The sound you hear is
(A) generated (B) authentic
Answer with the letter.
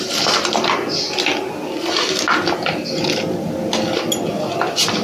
B